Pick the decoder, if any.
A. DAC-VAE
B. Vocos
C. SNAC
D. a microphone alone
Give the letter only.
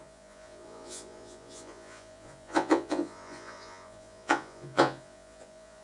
B